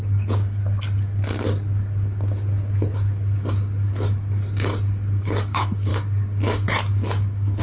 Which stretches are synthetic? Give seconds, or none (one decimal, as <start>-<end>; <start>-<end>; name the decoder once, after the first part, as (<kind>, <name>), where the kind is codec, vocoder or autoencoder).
0.0-0.6 (codec, DAC); 5.2-5.9